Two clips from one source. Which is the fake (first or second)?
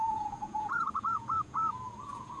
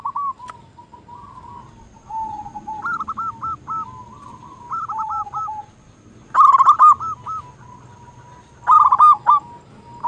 first